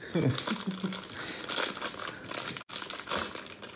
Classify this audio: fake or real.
real